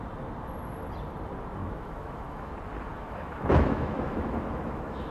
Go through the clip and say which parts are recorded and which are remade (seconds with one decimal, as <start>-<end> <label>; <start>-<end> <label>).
0.0-1.6 recorded; 1.6-2.5 remade; 2.5-2.9 recorded; 2.9-5.1 remade